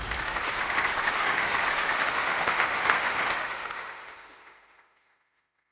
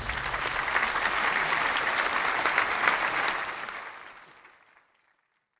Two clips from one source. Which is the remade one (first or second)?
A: first